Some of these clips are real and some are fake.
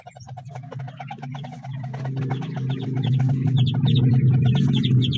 real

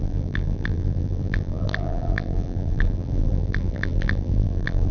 fake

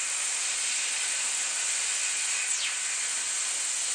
real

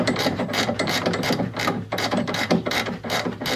fake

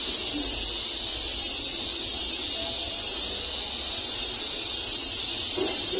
real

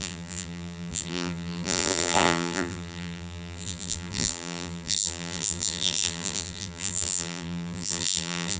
fake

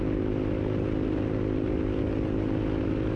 real